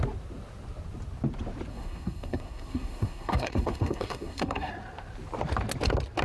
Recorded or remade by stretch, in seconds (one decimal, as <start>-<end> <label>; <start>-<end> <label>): 0.0-1.7 recorded; 1.7-4.7 remade; 4.7-6.2 recorded